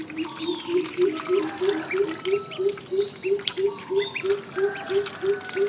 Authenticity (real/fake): real